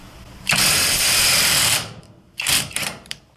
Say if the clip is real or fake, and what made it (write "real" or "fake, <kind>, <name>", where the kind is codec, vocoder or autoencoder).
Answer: fake, vocoder, BigVGAN v2